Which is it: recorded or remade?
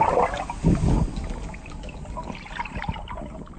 recorded